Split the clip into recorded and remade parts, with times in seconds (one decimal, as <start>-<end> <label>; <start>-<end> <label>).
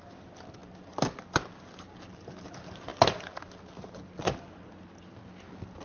0.0-5.8 recorded